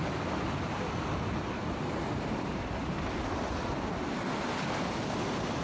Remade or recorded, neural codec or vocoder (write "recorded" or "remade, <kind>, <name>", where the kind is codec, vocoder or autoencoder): recorded